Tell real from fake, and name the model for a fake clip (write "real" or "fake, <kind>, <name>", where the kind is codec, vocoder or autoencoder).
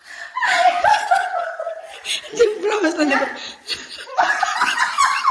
fake, vocoder, Vocos